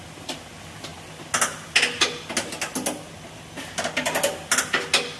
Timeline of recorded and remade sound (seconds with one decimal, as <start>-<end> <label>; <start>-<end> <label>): 0.0-5.2 recorded